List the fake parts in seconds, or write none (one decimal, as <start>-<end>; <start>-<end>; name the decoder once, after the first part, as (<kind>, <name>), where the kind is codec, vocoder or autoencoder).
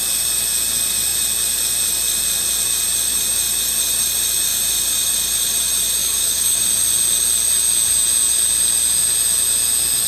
6.0-6.6 (codec, DAC)